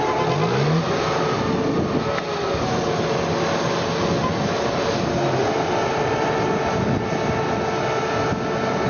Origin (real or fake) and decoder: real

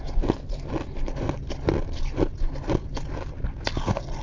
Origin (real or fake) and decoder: real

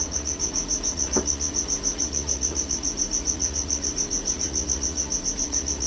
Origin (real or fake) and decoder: fake, vocoder, Vocos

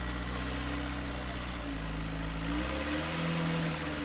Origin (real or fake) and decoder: real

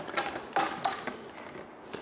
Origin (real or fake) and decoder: real